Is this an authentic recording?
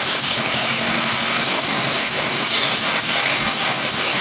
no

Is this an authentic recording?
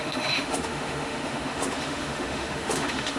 no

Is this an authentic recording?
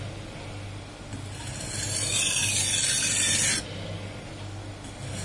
yes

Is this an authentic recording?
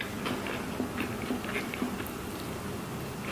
yes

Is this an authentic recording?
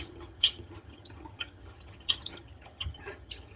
no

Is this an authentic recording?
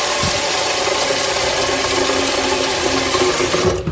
no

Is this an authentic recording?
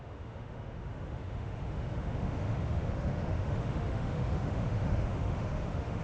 no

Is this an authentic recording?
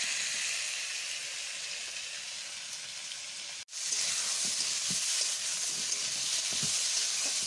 yes